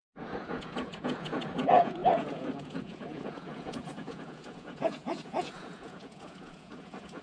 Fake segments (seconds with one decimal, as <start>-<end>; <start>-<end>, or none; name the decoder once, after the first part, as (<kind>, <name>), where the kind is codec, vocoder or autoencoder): 0.0-7.2 (vocoder, Vocos)